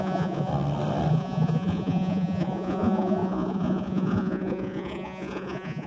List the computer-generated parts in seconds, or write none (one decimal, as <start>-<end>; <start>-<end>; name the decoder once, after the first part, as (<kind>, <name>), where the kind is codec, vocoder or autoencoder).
0.0-0.5 (vocoder, Vocos); 1.1-5.9